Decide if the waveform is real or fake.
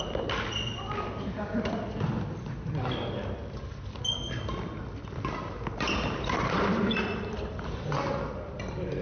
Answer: real